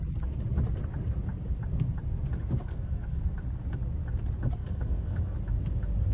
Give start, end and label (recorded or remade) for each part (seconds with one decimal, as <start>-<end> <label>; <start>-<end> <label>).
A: 0.0-2.6 recorded; 2.6-3.3 remade; 3.3-4.6 recorded; 4.6-5.2 remade; 5.2-6.1 recorded